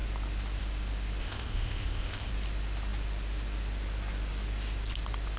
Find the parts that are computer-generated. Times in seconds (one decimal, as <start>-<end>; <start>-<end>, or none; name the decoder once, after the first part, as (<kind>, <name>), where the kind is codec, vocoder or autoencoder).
1.2-2.3 (codec, ZipCodec)